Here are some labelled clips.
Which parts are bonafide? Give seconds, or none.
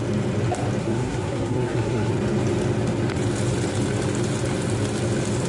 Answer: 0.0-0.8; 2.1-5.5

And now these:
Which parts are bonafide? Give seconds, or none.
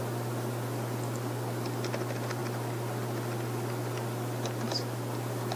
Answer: 0.0-5.6